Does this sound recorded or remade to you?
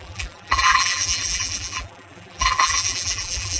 remade